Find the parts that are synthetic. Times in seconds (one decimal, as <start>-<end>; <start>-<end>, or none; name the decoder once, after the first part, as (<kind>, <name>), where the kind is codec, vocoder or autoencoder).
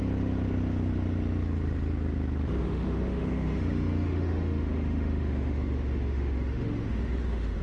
2.6-7.6 (autoencoder, DAC-VAE)